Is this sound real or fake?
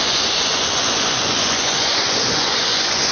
fake